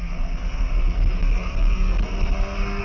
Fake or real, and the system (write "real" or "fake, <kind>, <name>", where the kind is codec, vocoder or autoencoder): fake, codec, SNAC